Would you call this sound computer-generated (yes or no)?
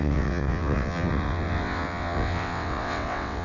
yes